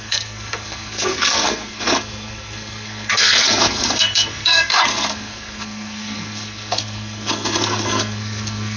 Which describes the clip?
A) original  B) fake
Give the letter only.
B